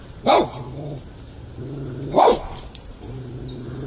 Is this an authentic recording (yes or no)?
no